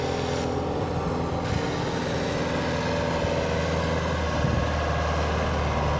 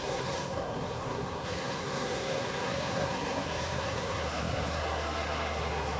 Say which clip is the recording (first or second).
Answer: first